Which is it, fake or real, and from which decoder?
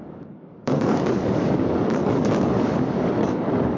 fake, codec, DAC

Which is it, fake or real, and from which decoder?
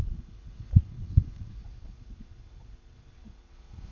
fake, vocoder, Vocos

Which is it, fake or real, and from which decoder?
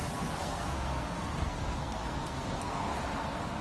fake, codec, SNAC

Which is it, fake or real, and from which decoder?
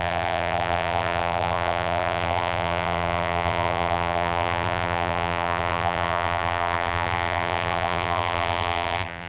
fake, vocoder, BigVGAN v2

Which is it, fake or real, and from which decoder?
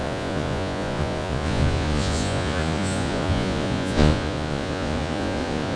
fake, vocoder, Vocos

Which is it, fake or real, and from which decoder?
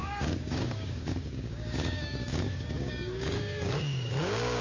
fake, codec, DAC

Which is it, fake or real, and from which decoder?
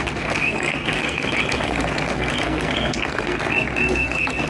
fake, codec, SNAC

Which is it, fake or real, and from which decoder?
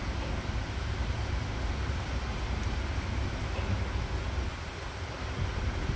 real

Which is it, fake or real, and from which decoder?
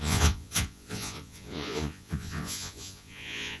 fake, vocoder, Vocos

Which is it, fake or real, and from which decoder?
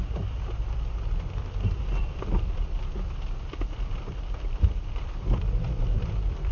fake, vocoder, BigVGAN v2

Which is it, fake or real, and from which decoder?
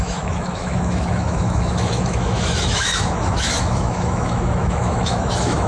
fake, autoencoder, DAC-VAE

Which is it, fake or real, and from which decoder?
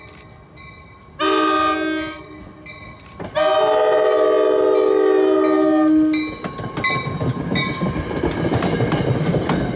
real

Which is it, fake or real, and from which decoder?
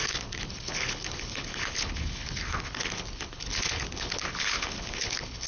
fake, codec, HILCodec